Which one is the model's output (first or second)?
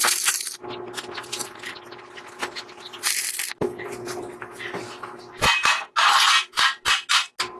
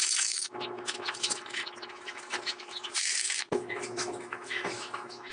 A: second